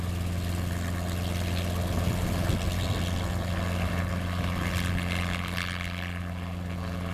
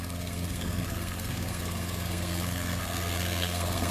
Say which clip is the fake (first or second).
second